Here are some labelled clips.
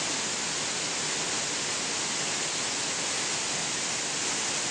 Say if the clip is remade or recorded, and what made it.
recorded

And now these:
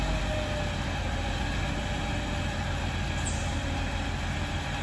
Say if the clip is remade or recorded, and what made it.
recorded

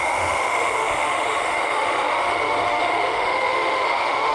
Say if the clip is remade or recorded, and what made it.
remade, autoencoder, DAC-VAE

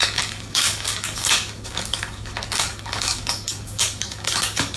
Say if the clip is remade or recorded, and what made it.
remade, codec, DAC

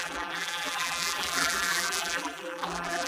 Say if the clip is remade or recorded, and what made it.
remade, vocoder, BigVGAN v2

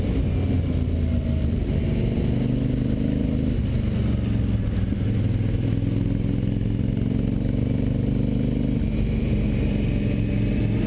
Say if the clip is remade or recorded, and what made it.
recorded